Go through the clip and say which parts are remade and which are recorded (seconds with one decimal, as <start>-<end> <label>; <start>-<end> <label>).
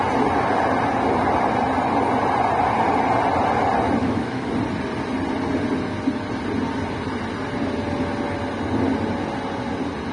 0.0-4.0 recorded; 4.0-4.5 remade; 4.5-10.1 recorded